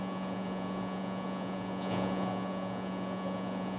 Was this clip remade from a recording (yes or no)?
yes